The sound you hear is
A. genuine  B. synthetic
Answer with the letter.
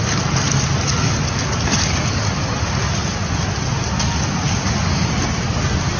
A